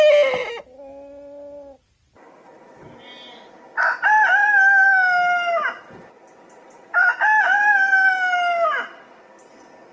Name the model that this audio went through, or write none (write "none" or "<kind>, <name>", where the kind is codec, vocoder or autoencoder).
none